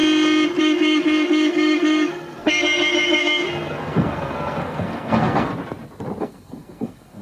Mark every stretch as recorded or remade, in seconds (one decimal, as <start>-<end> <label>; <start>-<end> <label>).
0.0-0.6 recorded; 0.6-5.5 remade; 5.5-6.2 recorded; 6.2-7.2 remade